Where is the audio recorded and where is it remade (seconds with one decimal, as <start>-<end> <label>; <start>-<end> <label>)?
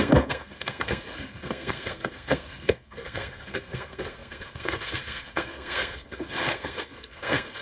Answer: 0.0-7.6 remade